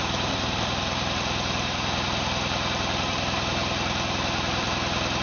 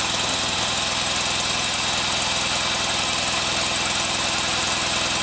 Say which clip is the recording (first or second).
second